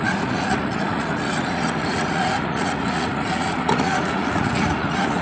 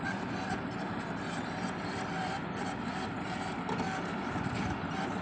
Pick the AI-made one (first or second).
first